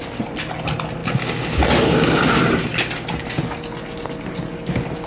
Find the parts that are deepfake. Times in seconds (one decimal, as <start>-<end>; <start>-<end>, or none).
none